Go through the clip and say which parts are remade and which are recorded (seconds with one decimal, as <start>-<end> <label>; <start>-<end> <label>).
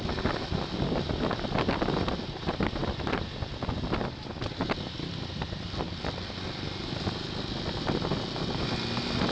0.0-9.3 recorded